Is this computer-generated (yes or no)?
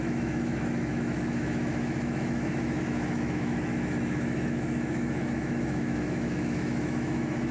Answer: yes